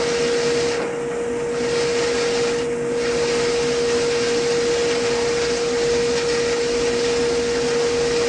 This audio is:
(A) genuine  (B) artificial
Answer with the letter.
A